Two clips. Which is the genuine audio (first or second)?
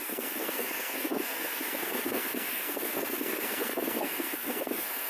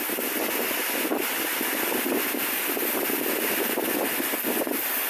second